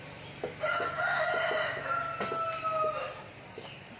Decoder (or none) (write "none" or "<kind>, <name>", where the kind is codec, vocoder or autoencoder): none